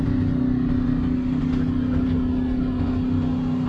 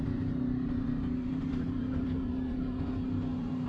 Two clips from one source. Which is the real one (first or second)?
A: first